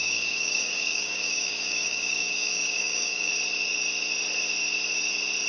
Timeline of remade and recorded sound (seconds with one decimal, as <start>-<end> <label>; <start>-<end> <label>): 0.0-3.3 remade; 3.3-5.5 recorded